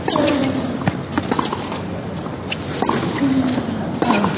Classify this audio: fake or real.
real